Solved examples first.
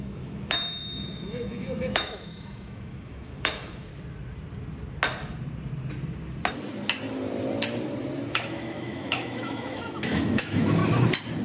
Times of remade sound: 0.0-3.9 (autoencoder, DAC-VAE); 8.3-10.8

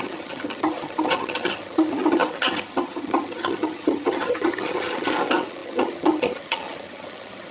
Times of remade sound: 0.0-7.5 (vocoder, HiFi-GAN)

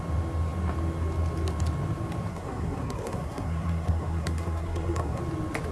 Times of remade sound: 2.3-5.2 (codec, SNAC)

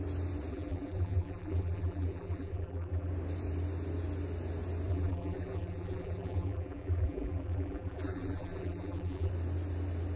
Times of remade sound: 0.5-3.1 (vocoder, BigVGAN v2); 4.9-9.3

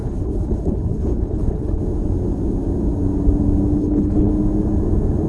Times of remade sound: 0.0-1.8 (codec, HILCodec); 3.8-4.3

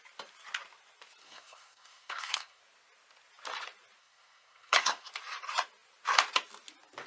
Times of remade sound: 1.2-2.6 (codec, SNAC); 4.0-5.1